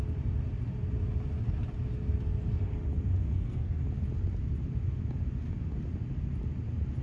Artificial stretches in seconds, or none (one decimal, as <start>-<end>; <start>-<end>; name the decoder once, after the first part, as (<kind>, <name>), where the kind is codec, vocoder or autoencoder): 3.2-3.8 (codec, SNAC)